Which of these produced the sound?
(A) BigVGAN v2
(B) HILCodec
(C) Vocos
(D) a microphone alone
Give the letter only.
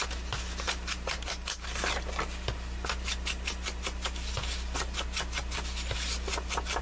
D